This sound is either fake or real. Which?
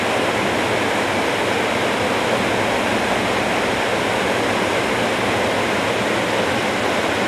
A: real